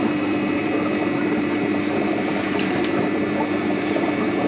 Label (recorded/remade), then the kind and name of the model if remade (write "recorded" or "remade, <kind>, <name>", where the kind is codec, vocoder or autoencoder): remade, vocoder, BigVGAN v2